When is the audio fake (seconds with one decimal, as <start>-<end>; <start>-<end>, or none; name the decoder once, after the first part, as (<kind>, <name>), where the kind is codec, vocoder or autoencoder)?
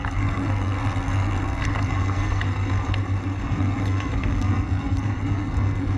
0.0-6.0 (codec, SNAC)